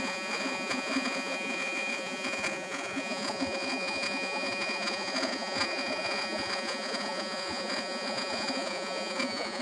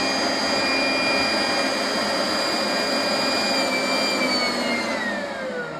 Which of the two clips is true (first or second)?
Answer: second